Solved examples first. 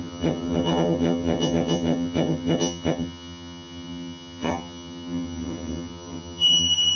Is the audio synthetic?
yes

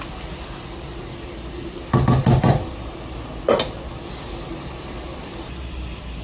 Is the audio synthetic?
no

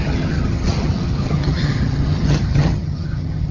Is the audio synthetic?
yes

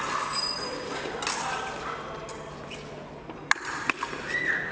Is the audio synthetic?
no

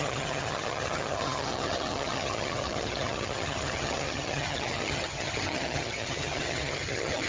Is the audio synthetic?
yes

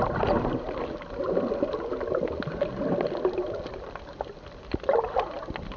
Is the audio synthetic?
no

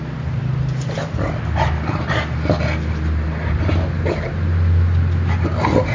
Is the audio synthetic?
no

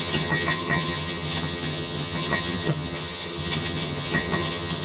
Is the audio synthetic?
yes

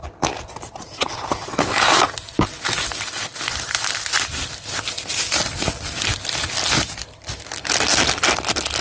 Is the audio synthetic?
no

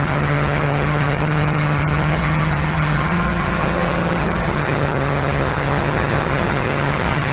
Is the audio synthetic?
yes